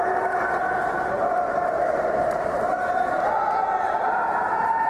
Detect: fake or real real